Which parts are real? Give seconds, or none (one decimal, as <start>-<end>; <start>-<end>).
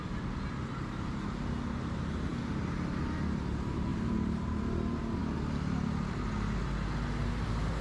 0.0-3.9; 4.6-7.8